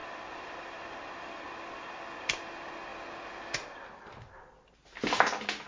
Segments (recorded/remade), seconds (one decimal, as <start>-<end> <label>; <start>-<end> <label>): 0.0-1.0 remade; 1.0-5.7 recorded